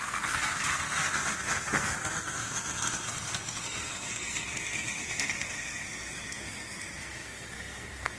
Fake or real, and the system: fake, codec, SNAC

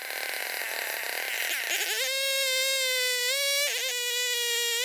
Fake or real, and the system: real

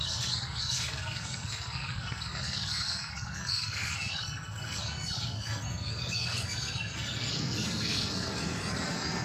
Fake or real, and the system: fake, codec, SNAC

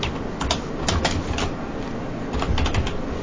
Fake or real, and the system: real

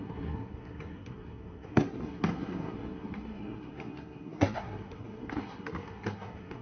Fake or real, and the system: fake, codec, SNAC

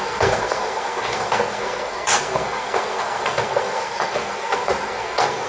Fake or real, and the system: fake, codec, SNAC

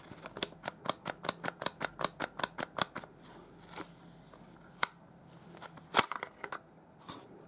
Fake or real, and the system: real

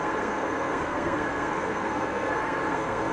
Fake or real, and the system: fake, codec, SNAC